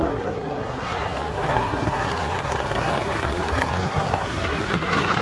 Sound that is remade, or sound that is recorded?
remade